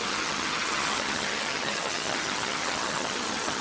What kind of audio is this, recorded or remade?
remade